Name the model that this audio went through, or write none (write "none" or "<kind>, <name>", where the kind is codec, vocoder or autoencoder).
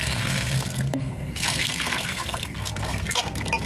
codec, SNAC